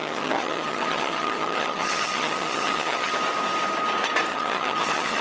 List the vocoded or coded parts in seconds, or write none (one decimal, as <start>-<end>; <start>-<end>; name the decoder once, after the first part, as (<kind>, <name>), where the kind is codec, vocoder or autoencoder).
0.0-3.1 (vocoder, HiFi-GAN); 4.3-5.2